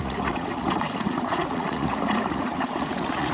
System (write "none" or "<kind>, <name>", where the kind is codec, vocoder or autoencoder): vocoder, Vocos